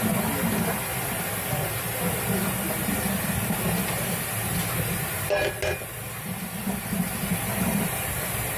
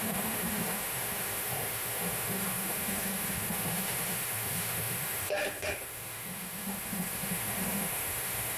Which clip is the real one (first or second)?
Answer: first